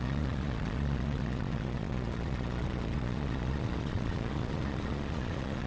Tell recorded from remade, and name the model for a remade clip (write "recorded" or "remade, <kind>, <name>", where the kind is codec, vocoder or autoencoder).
remade, vocoder, Vocos